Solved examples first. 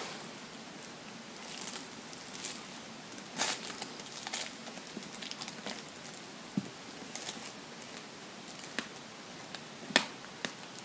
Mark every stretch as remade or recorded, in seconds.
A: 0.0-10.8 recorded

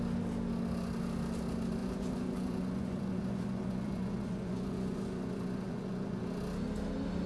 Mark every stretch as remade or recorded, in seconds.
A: 0.0-1.8 recorded; 1.8-6.2 remade; 6.2-7.3 recorded

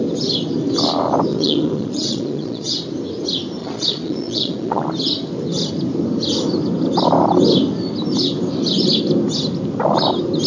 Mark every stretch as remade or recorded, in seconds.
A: 0.0-1.3 recorded; 1.3-2.7 remade; 2.7-3.6 recorded; 3.6-4.8 remade; 4.8-10.5 recorded

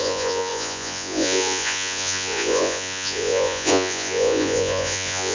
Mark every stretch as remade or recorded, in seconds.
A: 0.0-5.3 remade